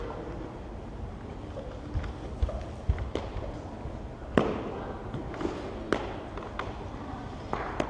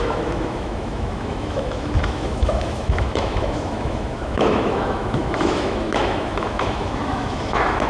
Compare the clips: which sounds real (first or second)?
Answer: first